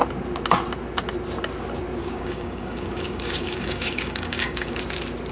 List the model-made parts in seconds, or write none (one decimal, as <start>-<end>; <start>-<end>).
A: 2.0-4.8